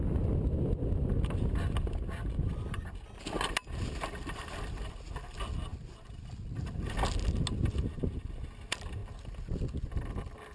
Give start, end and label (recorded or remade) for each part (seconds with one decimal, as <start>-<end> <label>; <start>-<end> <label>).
0.0-10.5 recorded